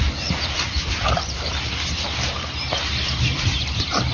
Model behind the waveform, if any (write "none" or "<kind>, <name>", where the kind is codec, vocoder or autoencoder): none